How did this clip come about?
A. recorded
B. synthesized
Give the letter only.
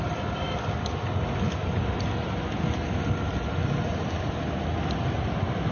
A